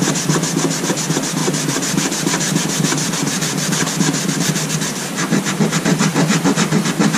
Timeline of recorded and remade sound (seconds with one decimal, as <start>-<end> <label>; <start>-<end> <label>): 0.0-1.4 recorded; 1.4-4.7 remade; 4.7-6.1 recorded; 6.1-6.7 remade; 6.7-7.2 recorded